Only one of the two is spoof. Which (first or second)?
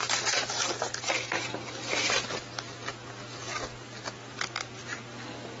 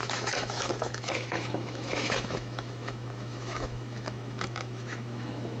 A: second